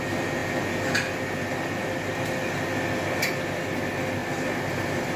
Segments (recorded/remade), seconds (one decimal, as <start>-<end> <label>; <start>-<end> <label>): 0.0-5.2 recorded